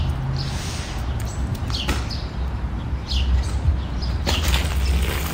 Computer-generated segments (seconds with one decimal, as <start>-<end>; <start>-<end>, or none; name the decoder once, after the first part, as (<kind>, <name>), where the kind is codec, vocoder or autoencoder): none